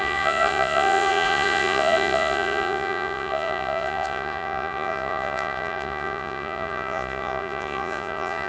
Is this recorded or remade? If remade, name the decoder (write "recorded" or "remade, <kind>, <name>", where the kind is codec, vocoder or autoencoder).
remade, vocoder, Vocos